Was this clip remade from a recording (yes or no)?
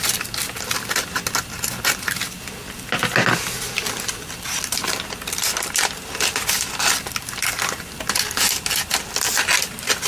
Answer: no